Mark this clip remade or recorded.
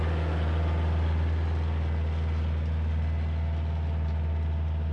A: recorded